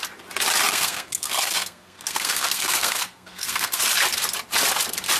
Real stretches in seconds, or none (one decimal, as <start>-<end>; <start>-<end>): 0.0-0.7; 3.8-5.2